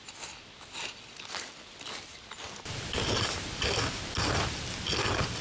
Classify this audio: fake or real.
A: real